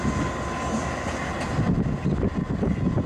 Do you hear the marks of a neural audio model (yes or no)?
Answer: no